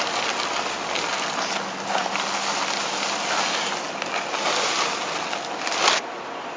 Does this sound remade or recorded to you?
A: recorded